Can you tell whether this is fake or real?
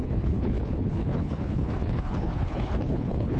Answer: fake